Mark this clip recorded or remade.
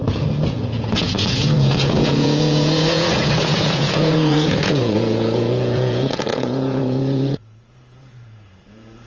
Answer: remade